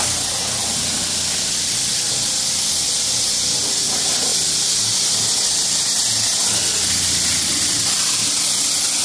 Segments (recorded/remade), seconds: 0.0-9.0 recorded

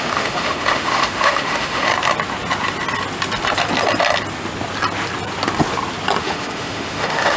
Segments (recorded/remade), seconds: 0.0-1.9 remade; 1.9-6.2 recorded; 6.2-7.4 remade

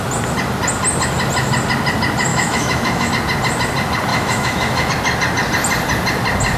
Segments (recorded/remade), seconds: 0.0-2.3 recorded; 2.3-3.1 remade; 3.1-4.1 recorded; 4.1-4.9 remade; 4.9-6.6 recorded

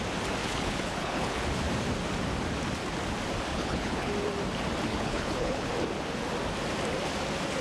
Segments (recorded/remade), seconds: 0.0-0.4 recorded; 0.4-1.5 remade; 1.5-3.5 recorded; 3.5-4.1 remade; 4.1-4.9 recorded; 4.9-5.7 remade; 5.7-7.6 recorded

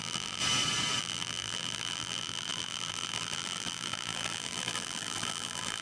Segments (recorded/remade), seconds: 0.0-0.4 remade; 0.4-1.0 recorded; 1.0-5.8 remade

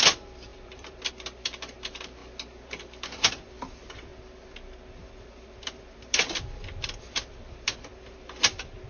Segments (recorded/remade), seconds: 0.0-2.2 remade; 2.2-2.7 recorded; 2.7-4.1 remade; 4.1-4.9 recorded; 4.9-8.9 remade

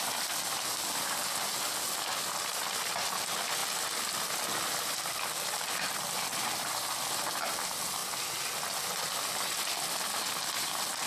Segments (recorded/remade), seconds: 0.0-11.1 recorded

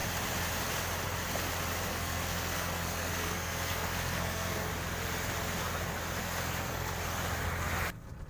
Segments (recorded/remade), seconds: 0.0-1.9 recorded; 1.9-4.7 remade; 4.7-6.2 recorded; 6.2-6.9 remade; 6.9-8.3 recorded